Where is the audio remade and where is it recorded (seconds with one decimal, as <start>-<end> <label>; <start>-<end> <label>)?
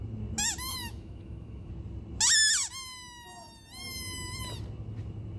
0.0-0.7 recorded; 0.7-1.7 remade; 1.7-5.4 recorded